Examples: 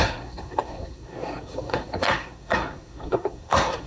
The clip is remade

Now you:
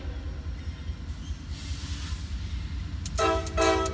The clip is recorded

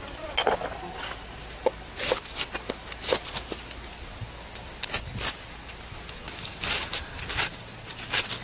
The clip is recorded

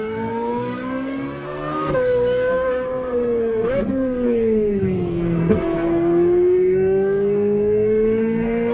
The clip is remade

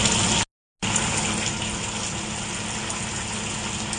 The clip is recorded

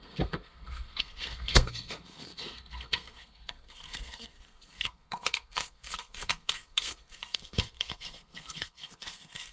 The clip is remade